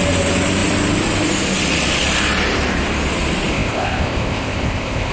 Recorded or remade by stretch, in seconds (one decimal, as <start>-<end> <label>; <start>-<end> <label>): 0.0-3.5 recorded; 3.5-5.1 remade